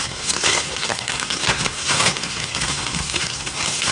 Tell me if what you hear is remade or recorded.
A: remade